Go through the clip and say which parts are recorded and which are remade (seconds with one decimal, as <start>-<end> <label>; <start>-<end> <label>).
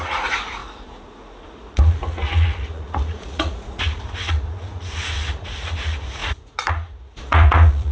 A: 0.0-7.9 remade